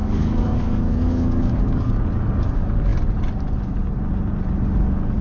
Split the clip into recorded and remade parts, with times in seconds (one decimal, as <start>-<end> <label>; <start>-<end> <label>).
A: 0.0-1.9 remade; 1.9-5.2 recorded